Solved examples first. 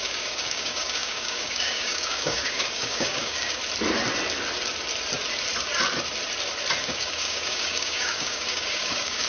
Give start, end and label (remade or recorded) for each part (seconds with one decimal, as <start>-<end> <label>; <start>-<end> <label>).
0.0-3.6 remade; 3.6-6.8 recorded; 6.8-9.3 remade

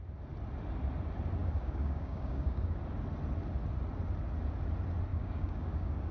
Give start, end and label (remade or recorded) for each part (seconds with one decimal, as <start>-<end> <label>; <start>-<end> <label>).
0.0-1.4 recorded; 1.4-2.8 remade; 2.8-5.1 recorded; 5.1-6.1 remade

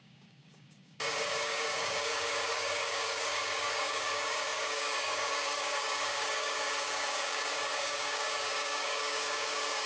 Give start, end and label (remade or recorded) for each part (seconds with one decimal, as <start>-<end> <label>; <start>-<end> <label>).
0.0-9.9 remade

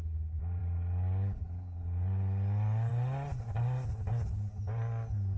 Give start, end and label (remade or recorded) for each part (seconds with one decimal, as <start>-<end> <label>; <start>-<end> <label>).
0.0-5.4 recorded